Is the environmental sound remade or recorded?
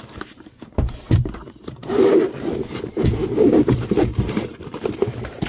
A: remade